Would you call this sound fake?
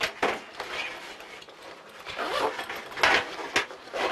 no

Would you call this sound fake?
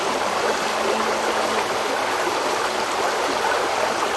no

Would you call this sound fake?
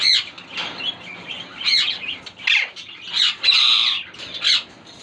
no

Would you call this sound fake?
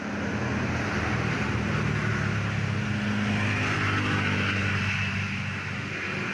no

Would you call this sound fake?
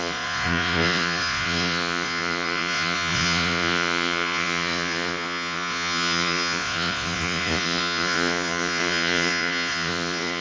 yes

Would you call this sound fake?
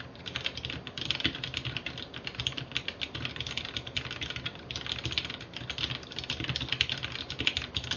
no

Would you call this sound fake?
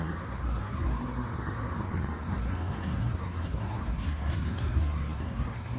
yes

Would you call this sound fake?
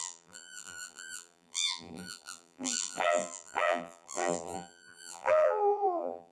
yes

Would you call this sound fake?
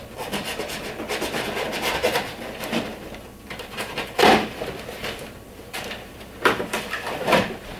yes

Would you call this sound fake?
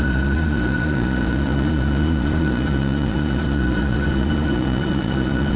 yes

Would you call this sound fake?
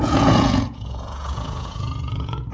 yes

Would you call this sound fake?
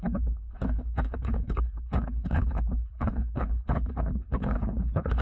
yes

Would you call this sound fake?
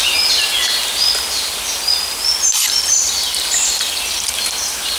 no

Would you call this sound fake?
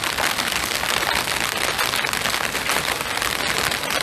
no